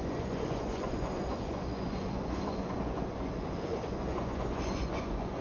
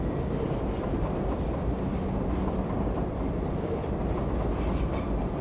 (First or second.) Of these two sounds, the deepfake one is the first